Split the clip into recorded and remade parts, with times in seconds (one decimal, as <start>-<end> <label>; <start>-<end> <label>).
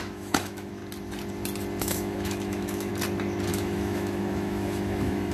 0.0-0.8 remade; 0.8-1.8 recorded; 1.8-2.9 remade; 2.9-3.5 recorded; 3.5-5.3 remade